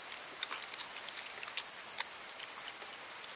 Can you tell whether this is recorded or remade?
recorded